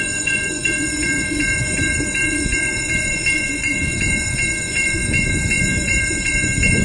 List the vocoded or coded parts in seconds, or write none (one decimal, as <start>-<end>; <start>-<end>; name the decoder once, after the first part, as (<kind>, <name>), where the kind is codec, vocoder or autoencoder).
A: 0.0-6.8 (vocoder, Vocos)